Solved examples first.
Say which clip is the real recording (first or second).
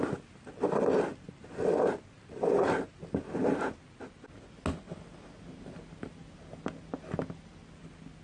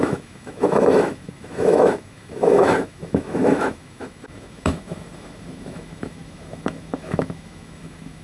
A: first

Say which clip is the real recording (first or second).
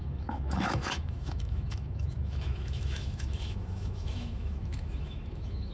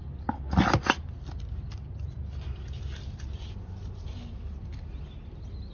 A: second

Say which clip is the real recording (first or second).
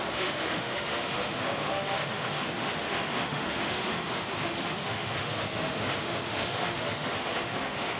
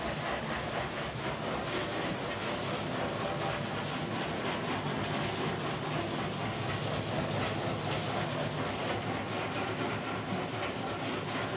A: second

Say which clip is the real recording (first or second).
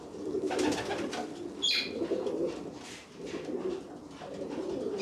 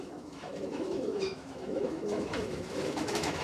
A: first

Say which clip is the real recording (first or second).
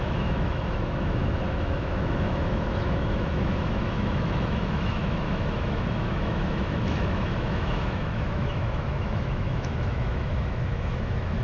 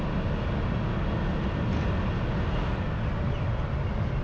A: second